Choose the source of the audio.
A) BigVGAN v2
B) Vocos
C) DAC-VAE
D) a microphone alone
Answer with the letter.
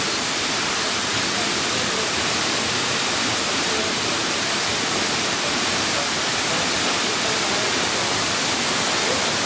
A